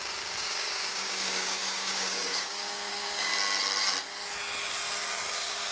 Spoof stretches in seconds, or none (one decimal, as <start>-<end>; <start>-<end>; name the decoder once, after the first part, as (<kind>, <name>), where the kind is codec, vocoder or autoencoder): 0.0-3.3 (codec, DAC); 5.2-5.7